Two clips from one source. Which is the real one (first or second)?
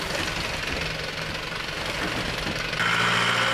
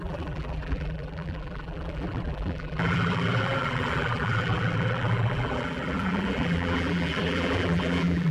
first